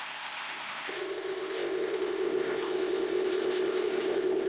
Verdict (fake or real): fake